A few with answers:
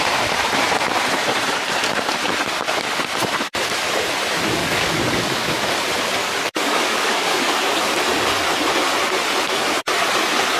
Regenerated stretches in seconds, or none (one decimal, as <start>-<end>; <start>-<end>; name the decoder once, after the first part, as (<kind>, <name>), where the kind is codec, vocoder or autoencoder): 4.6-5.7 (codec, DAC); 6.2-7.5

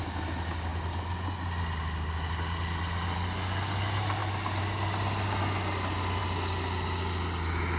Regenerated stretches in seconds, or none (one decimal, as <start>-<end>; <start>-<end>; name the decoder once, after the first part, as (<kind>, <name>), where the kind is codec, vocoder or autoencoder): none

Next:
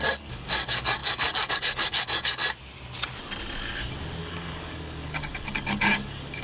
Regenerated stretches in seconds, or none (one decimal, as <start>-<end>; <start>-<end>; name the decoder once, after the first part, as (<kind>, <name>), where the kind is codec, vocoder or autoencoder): 0.0-2.4 (codec, DAC); 4.2-6.4

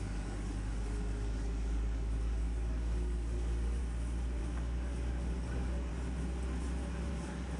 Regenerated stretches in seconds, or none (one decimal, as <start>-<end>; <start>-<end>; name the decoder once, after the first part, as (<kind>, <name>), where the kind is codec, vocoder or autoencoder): 0.0-3.8 (codec, DAC); 4.4-5.9; 7.1-7.6

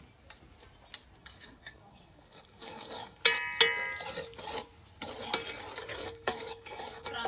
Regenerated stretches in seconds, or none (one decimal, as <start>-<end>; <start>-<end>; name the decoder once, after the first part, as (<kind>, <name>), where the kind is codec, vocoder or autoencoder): 1.2-3.2 (codec, DAC); 5.9-7.3

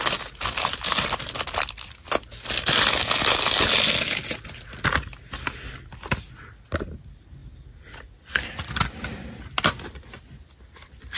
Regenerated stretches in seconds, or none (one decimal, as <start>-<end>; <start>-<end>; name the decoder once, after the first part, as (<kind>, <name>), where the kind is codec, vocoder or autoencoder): none

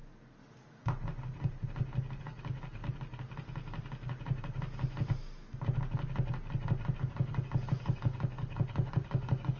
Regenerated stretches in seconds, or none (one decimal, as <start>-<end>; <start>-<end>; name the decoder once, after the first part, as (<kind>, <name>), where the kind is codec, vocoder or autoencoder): 2.2-2.8 (codec, DAC); 7.0-9.6